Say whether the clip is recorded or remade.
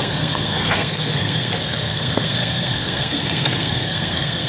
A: remade